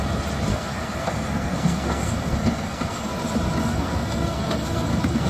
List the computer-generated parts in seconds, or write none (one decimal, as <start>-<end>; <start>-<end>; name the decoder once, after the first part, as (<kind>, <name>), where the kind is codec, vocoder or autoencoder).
0.5-3.1 (codec, SNAC); 3.6-5.3